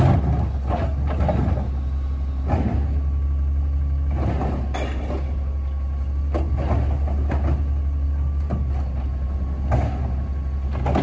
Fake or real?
real